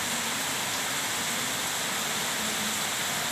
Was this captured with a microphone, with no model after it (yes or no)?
yes